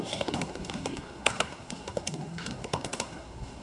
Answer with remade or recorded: remade